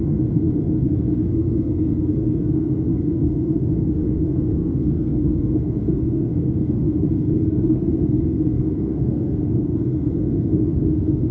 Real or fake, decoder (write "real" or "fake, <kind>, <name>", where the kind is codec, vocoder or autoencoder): fake, codec, SNAC